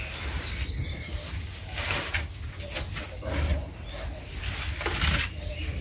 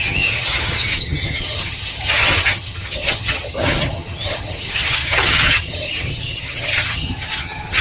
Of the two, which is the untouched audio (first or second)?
first